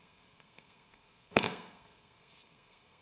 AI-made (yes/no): yes